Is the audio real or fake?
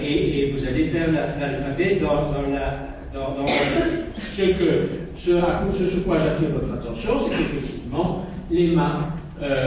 real